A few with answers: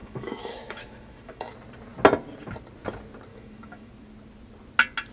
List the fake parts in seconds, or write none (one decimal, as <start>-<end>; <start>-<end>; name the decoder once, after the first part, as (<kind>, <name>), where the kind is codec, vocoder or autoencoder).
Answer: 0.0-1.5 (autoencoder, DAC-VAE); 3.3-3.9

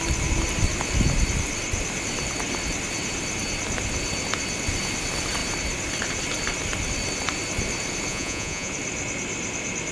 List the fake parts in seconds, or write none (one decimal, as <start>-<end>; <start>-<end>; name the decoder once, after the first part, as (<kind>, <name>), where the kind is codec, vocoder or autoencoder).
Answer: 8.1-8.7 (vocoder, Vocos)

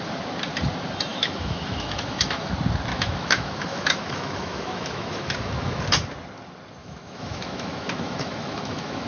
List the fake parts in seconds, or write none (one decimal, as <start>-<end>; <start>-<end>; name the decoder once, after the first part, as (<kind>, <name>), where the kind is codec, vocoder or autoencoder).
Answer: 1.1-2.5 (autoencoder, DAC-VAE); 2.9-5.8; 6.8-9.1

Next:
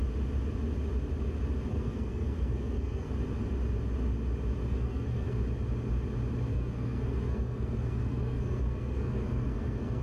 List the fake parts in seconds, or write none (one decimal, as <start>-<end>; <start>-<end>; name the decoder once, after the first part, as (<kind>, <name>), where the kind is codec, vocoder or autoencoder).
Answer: 1.7-3.1 (codec, SNAC); 4.7-5.4; 6.5-10.0

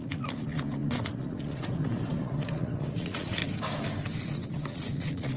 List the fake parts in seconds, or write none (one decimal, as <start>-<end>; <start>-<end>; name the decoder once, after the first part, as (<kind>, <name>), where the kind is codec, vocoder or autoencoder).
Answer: 0.0-3.4 (vocoder, Vocos); 4.2-5.4

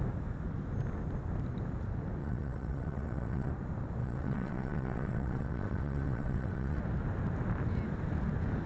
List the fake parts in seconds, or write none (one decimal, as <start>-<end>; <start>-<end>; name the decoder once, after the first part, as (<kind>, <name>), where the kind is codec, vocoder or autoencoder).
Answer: 2.2-3.5 (vocoder, WaveNeXt); 4.0-6.8